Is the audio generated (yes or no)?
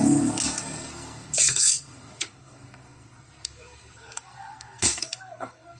yes